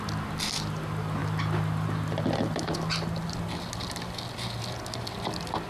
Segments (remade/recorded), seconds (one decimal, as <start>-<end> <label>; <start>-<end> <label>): 0.0-5.7 recorded